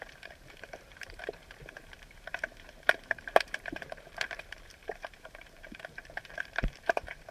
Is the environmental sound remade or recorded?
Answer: remade